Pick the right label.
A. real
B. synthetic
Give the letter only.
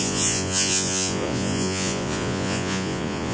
B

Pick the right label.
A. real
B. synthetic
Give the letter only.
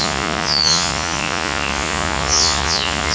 B